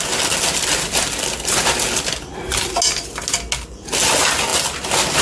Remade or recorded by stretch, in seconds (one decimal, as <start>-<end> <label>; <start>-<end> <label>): 0.0-5.2 recorded